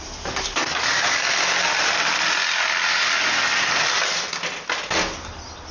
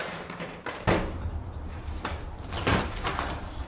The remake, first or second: second